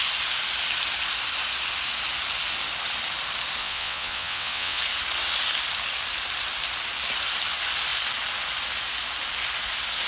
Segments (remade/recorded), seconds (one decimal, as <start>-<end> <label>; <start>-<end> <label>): 0.0-3.6 recorded; 3.6-4.8 remade; 4.8-10.1 recorded

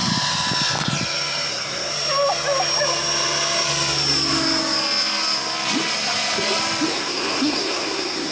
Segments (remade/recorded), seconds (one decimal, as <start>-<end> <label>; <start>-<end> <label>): 0.0-1.5 recorded; 1.5-1.9 remade; 1.9-6.9 recorded; 6.9-8.3 remade

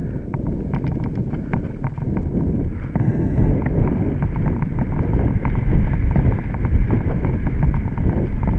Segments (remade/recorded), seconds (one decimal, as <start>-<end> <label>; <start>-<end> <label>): 0.0-3.0 recorded; 3.0-3.5 remade; 3.5-8.6 recorded

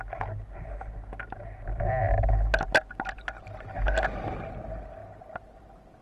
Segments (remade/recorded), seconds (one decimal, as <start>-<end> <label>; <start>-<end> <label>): 0.0-6.0 recorded